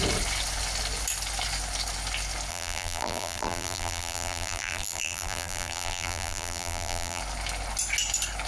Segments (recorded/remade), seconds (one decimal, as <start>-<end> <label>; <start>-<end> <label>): 0.0-2.5 recorded; 2.5-7.2 remade; 7.2-8.5 recorded